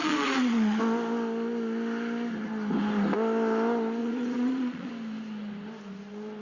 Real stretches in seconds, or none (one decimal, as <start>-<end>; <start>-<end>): 0.8-4.0; 4.9-6.4